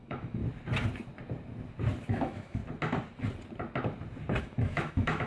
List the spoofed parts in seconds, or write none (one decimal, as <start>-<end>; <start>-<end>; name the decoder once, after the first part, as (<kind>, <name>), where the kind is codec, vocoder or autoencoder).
0.0-0.4 (autoencoder, DAC-VAE); 2.1-2.6; 4.4-5.3